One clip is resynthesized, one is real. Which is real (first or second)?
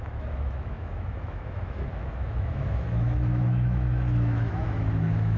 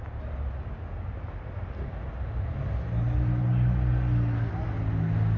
second